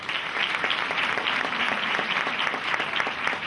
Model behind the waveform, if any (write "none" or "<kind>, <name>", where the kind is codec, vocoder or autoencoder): vocoder, BigVGAN v2